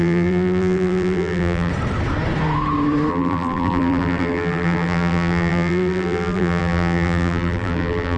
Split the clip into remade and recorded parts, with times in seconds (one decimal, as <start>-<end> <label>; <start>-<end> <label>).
0.0-1.7 remade; 1.7-3.1 recorded; 3.1-8.2 remade